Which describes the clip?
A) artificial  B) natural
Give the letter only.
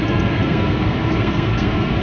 A